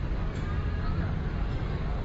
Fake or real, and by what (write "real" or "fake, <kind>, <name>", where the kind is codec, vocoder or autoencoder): real